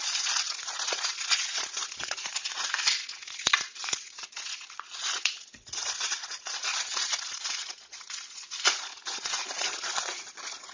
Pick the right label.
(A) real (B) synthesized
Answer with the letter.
B